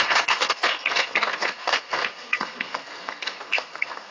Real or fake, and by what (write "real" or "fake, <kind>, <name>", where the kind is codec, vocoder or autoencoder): fake, codec, SNAC